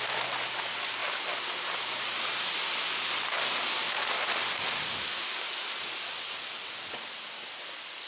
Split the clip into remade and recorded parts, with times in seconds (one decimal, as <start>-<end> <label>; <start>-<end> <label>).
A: 0.0-8.1 recorded